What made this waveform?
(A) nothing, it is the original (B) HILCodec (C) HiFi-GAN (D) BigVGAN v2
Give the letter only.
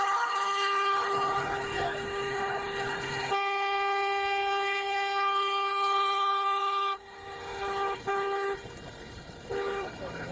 B